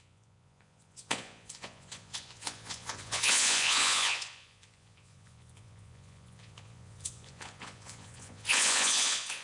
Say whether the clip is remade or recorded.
remade